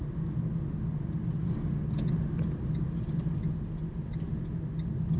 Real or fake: real